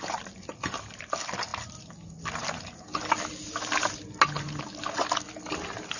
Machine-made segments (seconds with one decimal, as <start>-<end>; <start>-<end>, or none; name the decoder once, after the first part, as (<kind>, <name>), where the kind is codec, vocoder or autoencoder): none